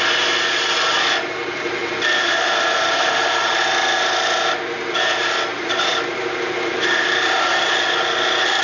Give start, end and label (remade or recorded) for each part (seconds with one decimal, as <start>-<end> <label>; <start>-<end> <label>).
0.0-1.8 recorded; 1.8-3.6 remade; 3.6-5.5 recorded; 5.5-7.5 remade; 7.5-8.6 recorded

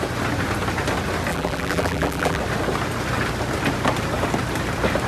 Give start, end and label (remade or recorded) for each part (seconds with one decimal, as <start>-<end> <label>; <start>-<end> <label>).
0.0-1.3 recorded; 1.3-2.4 remade; 2.4-5.1 recorded

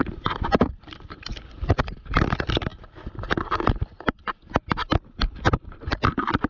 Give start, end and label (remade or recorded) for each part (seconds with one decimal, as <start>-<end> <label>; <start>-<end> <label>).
0.0-1.3 recorded; 1.3-1.8 remade; 1.8-6.5 recorded

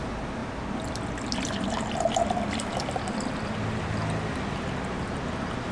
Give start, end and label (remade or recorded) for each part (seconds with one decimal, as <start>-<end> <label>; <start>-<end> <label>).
0.0-5.7 recorded